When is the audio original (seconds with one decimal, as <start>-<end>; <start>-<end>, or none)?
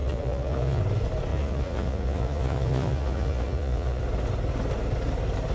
0.8-1.3; 4.0-5.5